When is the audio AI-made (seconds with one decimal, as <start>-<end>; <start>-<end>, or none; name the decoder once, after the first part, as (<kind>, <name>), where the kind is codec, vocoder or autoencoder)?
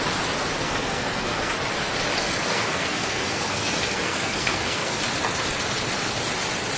0.6-1.5 (codec, SNAC); 2.2-5.0